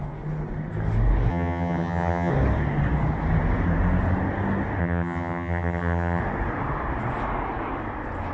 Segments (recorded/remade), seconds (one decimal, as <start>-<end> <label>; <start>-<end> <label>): 0.0-1.3 recorded; 1.3-2.3 remade; 2.3-4.8 recorded; 4.8-6.2 remade; 6.2-8.3 recorded